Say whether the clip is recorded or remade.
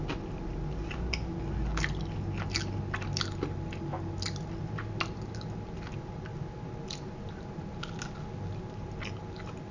recorded